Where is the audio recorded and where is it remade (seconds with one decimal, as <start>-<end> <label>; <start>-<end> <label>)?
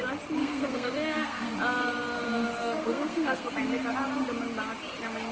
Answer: 0.0-0.4 recorded; 0.4-1.5 remade; 1.5-2.6 recorded; 2.6-3.5 remade; 3.5-5.3 recorded